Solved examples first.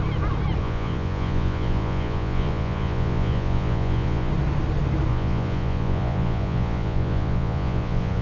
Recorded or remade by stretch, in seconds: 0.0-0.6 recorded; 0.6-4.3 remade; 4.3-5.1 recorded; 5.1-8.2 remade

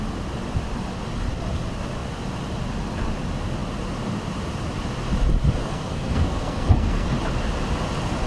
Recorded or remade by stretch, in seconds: 0.0-5.6 recorded; 5.6-7.1 remade; 7.1-8.3 recorded

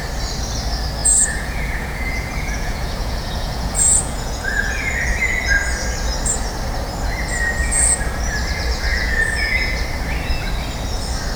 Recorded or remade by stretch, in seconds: 0.0-1.0 recorded; 1.0-4.9 remade; 4.9-7.6 recorded; 7.6-8.2 remade; 8.2-8.9 recorded; 8.9-9.8 remade; 9.8-11.4 recorded